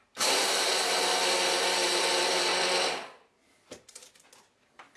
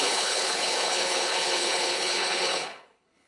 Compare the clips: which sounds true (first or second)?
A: first